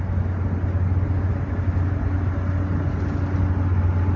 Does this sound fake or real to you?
real